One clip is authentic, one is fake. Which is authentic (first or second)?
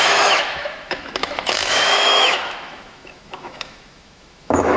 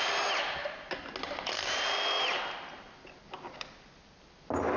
second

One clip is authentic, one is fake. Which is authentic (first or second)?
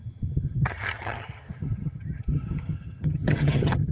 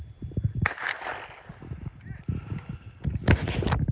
second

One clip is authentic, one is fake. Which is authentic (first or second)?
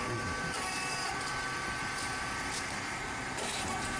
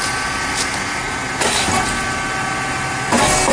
second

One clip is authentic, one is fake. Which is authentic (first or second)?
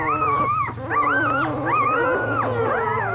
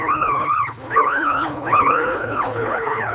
first